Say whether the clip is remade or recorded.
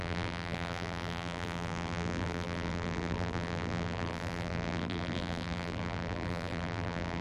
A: remade